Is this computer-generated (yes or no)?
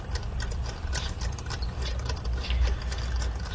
no